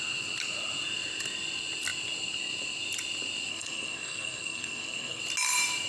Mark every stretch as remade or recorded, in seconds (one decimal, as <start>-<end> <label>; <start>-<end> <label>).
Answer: 0.0-3.5 recorded; 3.5-5.2 remade; 5.2-5.9 recorded